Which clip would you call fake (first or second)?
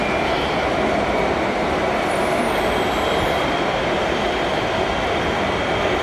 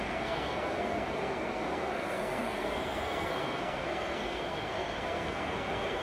second